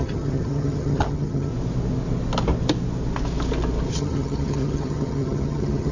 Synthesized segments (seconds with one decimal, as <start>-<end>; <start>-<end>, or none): 0.0-1.5; 3.9-5.9